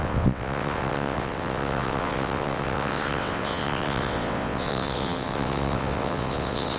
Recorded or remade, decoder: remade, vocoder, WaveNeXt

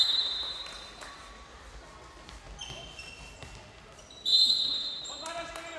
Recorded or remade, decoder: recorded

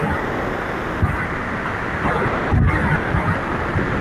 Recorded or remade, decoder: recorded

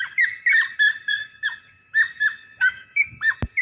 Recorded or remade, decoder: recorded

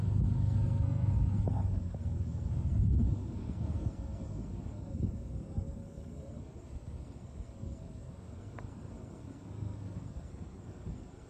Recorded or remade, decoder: remade, codec, SNAC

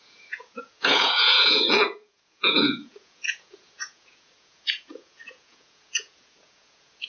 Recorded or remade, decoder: remade, vocoder, Vocos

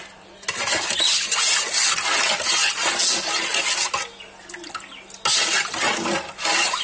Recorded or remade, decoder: recorded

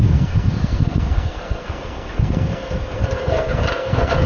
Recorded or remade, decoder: remade, codec, SNAC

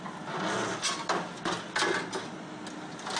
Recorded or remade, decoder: recorded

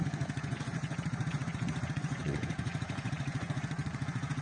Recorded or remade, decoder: remade, vocoder, Vocos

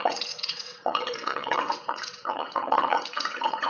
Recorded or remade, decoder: remade, vocoder, WaveNeXt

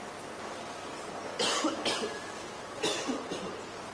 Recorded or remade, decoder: recorded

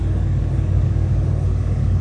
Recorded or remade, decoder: remade, codec, DAC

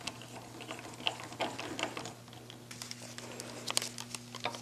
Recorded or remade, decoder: recorded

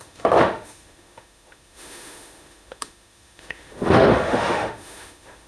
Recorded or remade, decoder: remade, autoencoder, DAC-VAE